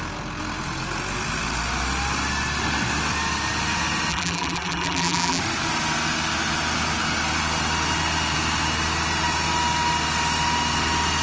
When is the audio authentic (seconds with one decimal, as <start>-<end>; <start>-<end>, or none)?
0.0-4.1; 5.4-11.2